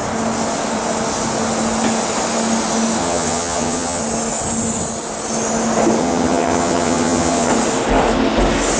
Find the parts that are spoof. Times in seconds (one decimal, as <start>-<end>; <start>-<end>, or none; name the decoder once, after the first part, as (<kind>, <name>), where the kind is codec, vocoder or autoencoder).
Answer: 3.0-4.0 (vocoder, HiFi-GAN); 6.0-7.5